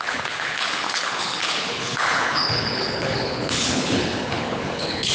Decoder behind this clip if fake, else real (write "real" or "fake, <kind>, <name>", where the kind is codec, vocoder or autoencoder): fake, codec, HILCodec